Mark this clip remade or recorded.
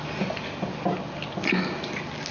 recorded